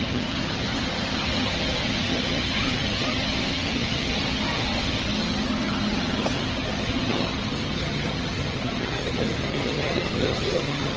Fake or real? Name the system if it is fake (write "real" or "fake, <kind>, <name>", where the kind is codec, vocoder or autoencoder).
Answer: fake, vocoder, HiFi-GAN